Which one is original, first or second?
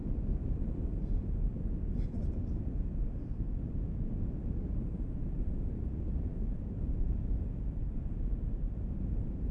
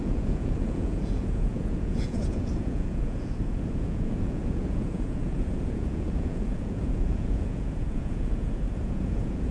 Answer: first